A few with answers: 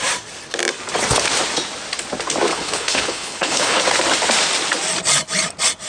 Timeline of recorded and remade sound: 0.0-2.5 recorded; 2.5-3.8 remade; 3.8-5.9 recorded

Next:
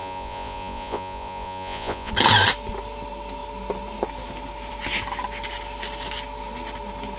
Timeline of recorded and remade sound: 0.0-2.1 remade; 2.1-7.2 recorded

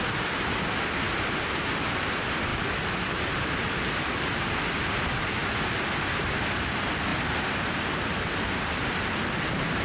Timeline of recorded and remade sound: 0.0-9.8 recorded

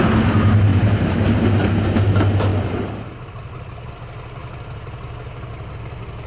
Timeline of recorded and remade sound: 0.0-0.7 recorded; 0.7-1.4 remade; 1.4-2.5 recorded; 2.5-3.9 remade; 3.9-6.3 recorded

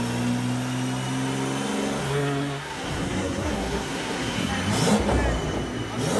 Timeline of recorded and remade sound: 0.0-2.0 recorded; 2.0-4.5 remade; 4.5-6.2 recorded

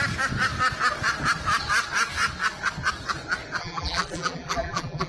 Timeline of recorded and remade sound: 0.0-3.6 recorded; 3.6-5.1 remade

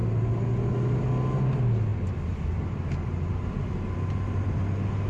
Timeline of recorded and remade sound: 0.0-1.9 recorded; 1.9-4.6 remade; 4.6-5.1 recorded